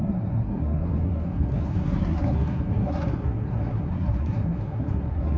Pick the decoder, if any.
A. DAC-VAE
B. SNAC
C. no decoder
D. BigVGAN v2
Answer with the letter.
B